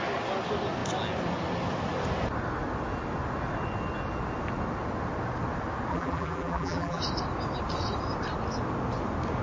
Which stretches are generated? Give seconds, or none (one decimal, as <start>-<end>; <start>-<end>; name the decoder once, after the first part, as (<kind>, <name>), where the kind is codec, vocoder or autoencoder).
5.9-7.0 (vocoder, BigVGAN v2)